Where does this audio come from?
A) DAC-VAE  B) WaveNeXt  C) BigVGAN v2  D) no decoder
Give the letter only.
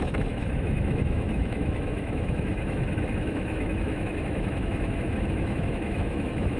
A